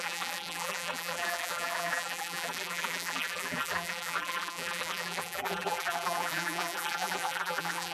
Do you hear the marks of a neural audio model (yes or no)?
yes